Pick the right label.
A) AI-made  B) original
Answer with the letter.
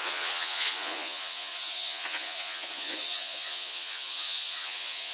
A